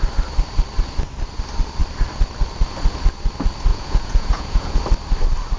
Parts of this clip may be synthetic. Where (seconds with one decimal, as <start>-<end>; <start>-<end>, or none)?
3.7-4.8